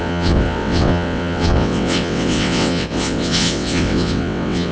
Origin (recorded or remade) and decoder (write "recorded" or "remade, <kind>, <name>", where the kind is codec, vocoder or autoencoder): remade, vocoder, WaveNeXt